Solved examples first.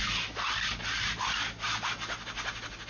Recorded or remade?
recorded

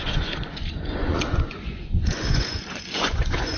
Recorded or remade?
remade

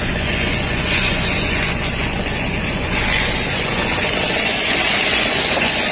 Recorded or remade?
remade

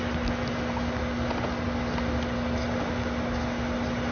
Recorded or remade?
recorded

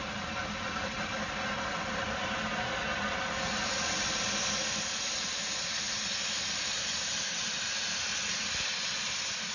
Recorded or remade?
recorded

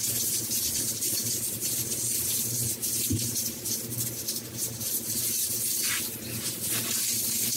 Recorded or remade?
recorded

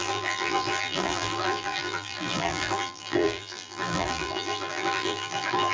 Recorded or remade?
remade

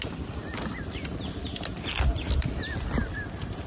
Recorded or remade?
recorded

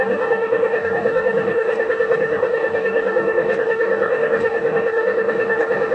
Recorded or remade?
remade